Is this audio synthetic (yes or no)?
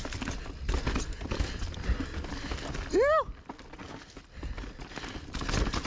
no